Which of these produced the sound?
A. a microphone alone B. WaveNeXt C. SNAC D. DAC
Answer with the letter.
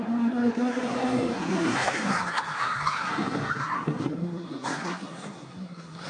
C